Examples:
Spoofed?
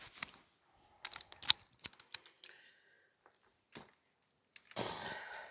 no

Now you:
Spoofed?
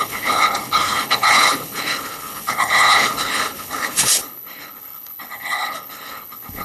yes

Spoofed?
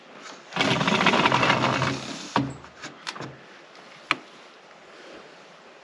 no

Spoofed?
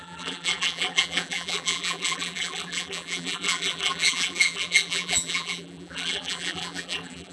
yes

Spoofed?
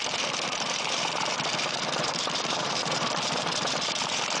yes